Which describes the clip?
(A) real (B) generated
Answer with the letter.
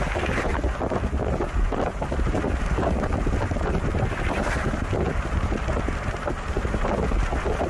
A